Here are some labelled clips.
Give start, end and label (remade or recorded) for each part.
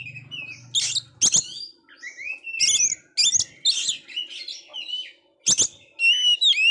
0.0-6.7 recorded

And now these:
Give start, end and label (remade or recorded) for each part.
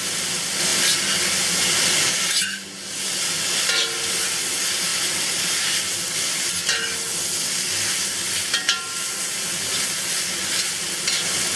0.0-11.6 recorded